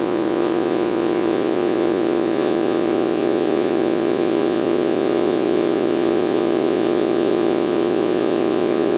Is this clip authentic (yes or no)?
no